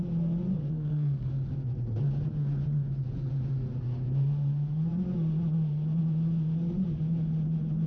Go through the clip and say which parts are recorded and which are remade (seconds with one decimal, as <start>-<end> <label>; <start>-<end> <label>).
0.0-0.6 recorded; 0.6-1.3 remade; 1.3-7.9 recorded